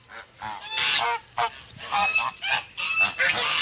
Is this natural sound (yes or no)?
yes